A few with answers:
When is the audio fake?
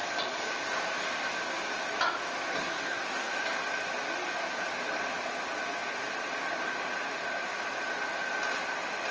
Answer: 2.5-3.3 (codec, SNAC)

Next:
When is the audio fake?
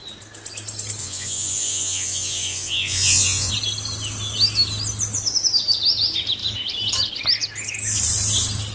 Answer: 1.0-3.5 (vocoder, Vocos)